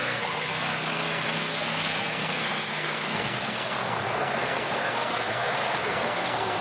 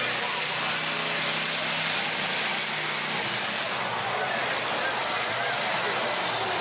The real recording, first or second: second